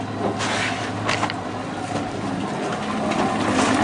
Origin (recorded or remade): recorded